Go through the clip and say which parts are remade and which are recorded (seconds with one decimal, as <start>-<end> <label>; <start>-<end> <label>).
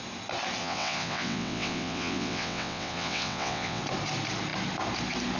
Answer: 0.0-0.6 recorded; 0.6-3.8 remade; 3.8-5.4 recorded